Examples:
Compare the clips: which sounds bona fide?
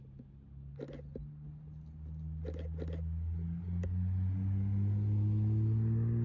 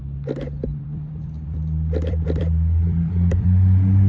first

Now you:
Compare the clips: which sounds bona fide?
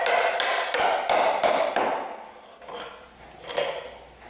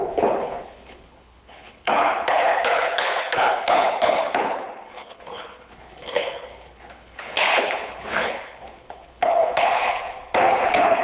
first